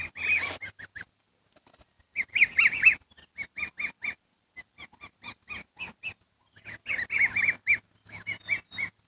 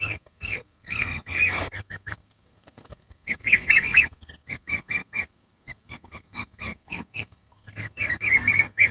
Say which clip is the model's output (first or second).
second